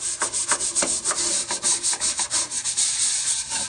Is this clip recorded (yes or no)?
yes